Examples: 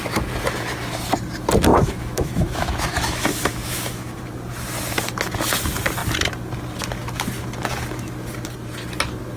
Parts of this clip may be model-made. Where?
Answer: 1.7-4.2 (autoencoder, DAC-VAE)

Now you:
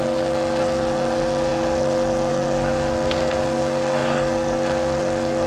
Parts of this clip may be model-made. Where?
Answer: 0.0-5.5 (codec, SNAC)

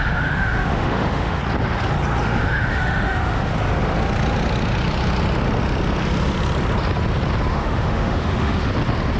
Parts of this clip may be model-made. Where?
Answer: 0.0-1.4 (autoencoder, DAC-VAE); 2.2-3.5; 7.5-8.7

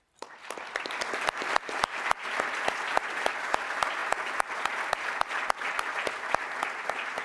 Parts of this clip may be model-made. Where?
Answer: none

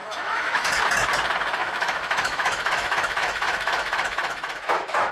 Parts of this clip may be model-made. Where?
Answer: 0.0-0.8 (autoencoder, DAC-VAE); 1.6-5.1

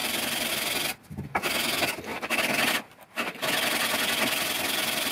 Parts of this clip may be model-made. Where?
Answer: 0.0-0.5 (vocoder, BigVGAN v2); 2.1-2.7

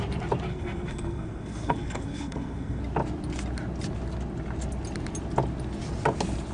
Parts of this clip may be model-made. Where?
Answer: 0.5-2.8 (codec, SNAC)